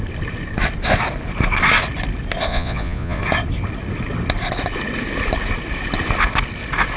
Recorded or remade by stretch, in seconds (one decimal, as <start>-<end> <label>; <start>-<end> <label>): 0.0-2.5 recorded; 2.5-3.2 remade; 3.2-7.0 recorded